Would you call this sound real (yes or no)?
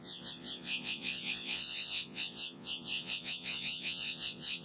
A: no